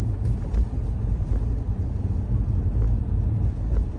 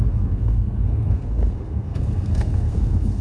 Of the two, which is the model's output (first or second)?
second